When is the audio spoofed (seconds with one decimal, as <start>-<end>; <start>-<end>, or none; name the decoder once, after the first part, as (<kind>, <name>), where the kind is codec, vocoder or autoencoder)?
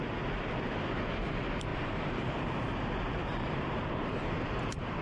1.7-2.3 (vocoder, BigVGAN v2); 3.2-5.0